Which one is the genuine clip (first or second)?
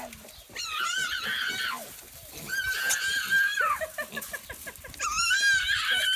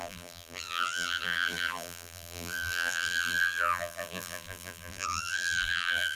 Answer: first